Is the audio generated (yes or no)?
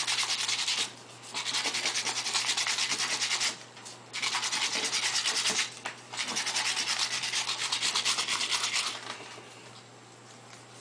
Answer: yes